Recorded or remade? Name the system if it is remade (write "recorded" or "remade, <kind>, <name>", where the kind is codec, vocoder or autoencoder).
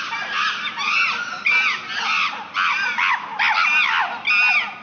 recorded